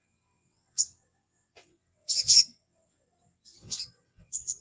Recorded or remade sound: remade